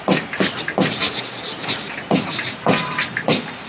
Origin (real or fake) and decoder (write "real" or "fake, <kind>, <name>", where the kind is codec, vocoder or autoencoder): real